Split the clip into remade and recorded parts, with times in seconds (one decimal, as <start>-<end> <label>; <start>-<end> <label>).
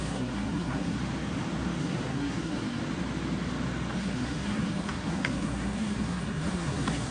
0.0-1.0 remade; 1.0-1.8 recorded; 1.8-2.8 remade; 2.8-4.0 recorded; 4.0-7.1 remade